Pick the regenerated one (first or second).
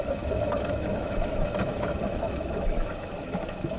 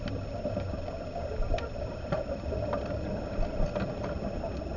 first